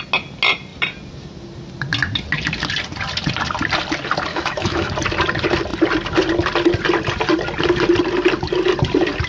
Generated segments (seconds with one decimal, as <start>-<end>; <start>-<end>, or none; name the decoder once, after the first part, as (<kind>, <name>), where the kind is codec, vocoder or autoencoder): 4.3-4.9 (autoencoder, DAC-VAE)